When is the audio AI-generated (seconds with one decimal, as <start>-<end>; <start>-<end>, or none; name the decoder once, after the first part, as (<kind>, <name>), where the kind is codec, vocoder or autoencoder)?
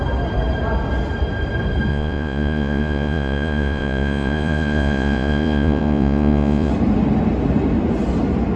1.9-6.7 (vocoder, Vocos)